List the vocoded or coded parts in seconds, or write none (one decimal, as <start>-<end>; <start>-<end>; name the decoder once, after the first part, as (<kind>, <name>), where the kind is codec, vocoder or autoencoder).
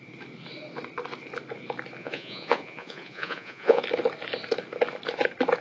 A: 2.0-3.8 (vocoder, Vocos)